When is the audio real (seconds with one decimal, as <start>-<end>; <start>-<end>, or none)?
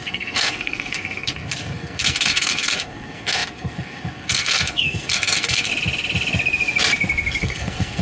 5.7-7.4